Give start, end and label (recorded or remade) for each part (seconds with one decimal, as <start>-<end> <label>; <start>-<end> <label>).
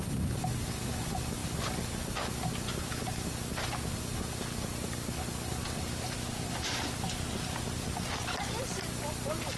0.0-5.6 recorded; 5.6-8.6 remade; 8.6-9.6 recorded